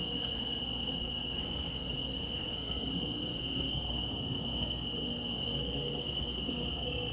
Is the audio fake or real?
fake